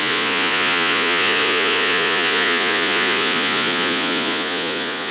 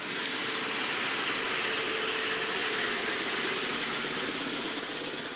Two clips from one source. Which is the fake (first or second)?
first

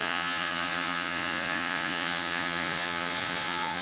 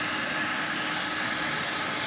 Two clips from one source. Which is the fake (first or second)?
first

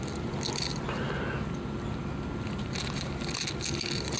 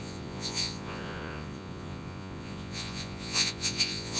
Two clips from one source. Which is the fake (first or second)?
second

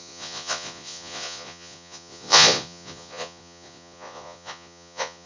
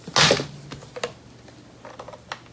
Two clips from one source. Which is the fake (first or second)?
first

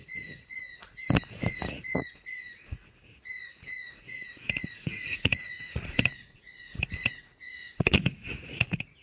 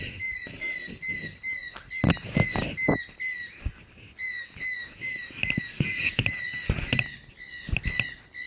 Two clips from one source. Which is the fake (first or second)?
first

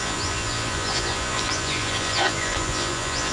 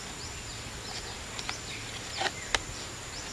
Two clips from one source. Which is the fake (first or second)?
first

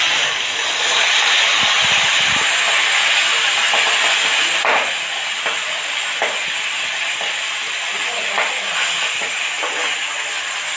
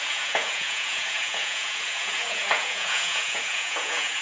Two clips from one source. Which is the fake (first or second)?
second